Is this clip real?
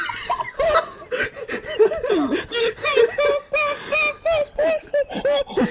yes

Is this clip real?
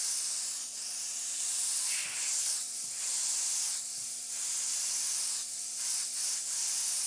yes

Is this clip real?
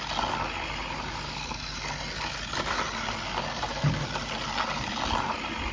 yes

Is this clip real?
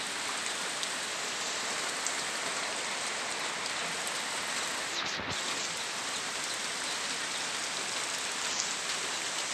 yes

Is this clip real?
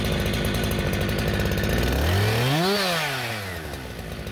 yes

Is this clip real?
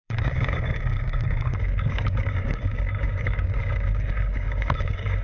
no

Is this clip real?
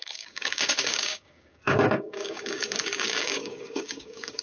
no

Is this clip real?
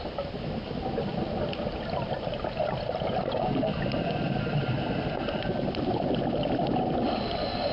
yes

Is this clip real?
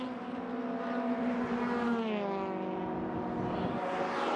yes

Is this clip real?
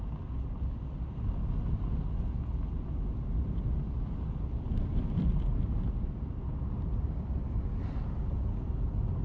yes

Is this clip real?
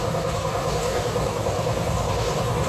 no